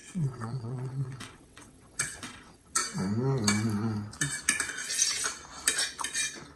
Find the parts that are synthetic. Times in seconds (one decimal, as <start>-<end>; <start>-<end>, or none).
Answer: 0.0-2.8